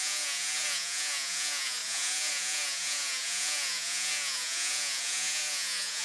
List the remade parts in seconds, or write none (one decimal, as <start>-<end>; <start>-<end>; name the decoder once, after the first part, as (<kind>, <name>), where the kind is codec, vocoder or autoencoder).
0.0-6.0 (vocoder, Vocos)